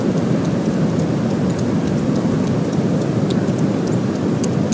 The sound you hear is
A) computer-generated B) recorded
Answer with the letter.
A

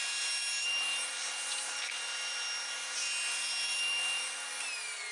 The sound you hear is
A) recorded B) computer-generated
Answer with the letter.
A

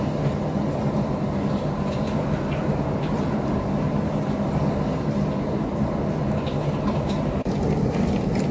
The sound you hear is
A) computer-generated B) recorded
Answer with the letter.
B